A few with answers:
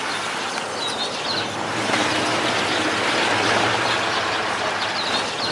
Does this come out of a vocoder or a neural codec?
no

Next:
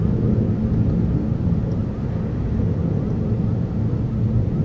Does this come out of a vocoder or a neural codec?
no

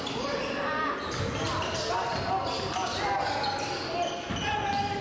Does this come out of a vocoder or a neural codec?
no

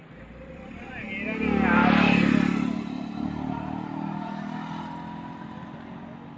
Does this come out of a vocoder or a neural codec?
no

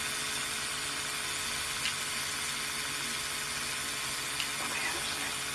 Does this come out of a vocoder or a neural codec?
no